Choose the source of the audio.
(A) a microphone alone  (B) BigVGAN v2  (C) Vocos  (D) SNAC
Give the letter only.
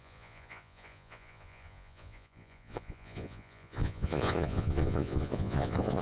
C